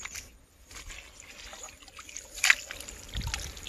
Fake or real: real